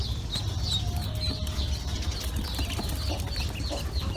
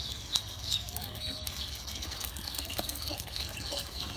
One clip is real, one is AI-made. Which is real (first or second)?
first